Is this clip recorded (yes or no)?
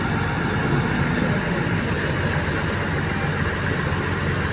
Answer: yes